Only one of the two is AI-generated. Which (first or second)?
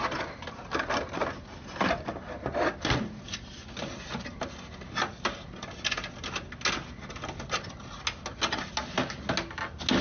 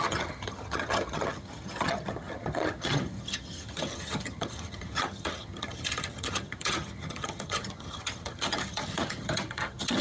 second